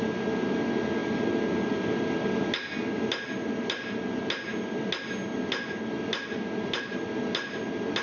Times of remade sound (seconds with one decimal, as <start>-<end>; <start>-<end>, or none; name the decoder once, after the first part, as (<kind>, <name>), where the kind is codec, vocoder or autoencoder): none